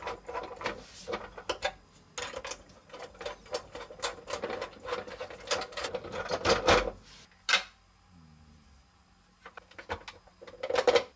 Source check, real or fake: real